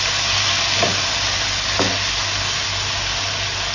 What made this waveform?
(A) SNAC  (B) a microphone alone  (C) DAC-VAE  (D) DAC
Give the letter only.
B